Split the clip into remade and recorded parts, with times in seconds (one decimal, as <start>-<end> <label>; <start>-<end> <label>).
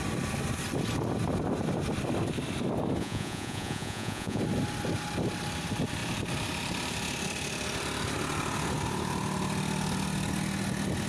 0.0-3.0 recorded; 3.0-4.4 remade; 4.4-11.1 recorded